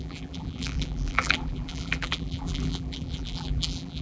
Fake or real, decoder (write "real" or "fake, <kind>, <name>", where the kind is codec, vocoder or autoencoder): fake, vocoder, BigVGAN v2